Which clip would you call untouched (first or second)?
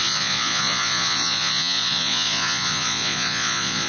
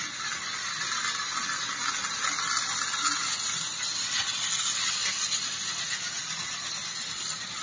second